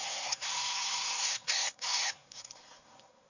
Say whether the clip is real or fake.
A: fake